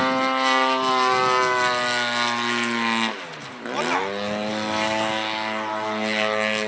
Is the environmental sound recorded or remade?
recorded